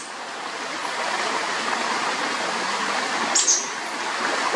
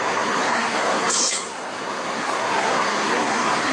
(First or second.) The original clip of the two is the first